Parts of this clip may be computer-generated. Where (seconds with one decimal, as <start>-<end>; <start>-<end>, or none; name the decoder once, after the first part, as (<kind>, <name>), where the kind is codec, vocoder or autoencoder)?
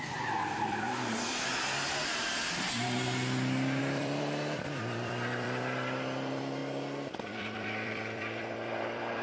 0.0-1.5 (vocoder, BigVGAN v2); 3.8-6.6; 7.1-9.2